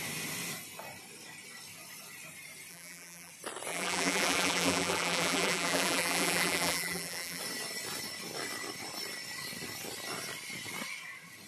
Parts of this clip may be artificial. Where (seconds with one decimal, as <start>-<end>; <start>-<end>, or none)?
2.7-3.3; 3.7-7.4